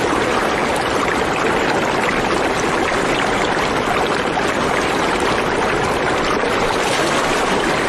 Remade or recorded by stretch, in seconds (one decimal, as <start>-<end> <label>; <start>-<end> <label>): 0.0-7.9 recorded